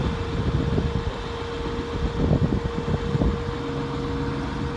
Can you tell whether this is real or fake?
real